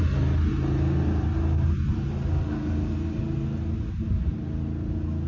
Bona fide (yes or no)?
yes